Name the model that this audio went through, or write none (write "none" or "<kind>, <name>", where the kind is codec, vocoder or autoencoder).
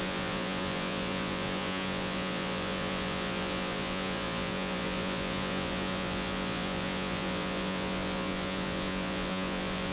vocoder, Vocos